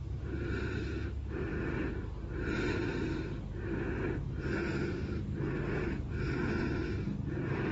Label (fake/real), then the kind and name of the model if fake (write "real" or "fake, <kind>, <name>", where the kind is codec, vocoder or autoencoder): real